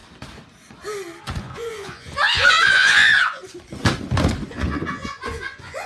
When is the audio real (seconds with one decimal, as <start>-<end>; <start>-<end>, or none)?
0.0-1.4; 3.4-4.5